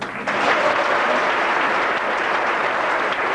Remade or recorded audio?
recorded